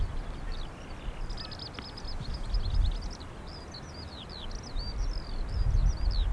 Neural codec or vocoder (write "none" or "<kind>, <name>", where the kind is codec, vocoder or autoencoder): none